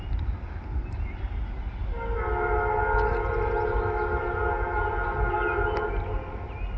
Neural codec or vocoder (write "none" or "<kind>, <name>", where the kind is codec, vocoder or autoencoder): none